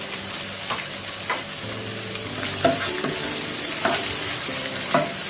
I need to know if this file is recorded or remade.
remade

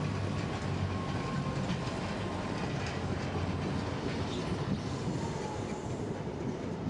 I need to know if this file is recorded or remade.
recorded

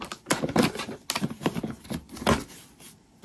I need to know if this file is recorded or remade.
recorded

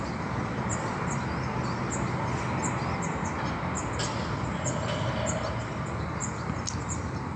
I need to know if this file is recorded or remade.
remade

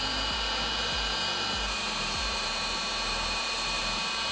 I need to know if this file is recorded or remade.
remade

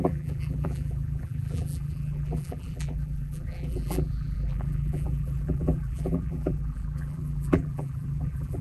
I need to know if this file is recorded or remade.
remade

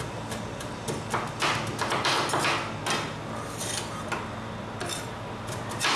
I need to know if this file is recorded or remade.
recorded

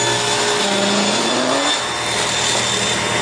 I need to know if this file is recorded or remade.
recorded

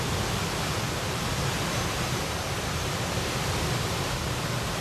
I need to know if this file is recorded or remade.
recorded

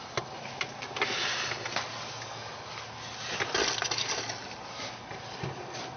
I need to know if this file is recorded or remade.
recorded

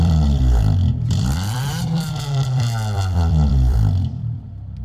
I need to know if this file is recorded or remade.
remade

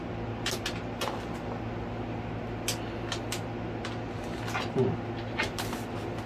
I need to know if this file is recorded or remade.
recorded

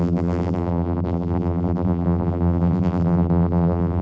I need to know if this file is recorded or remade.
remade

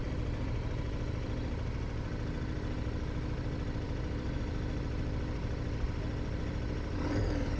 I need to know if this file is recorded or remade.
remade